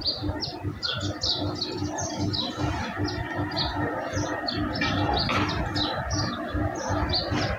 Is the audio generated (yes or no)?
no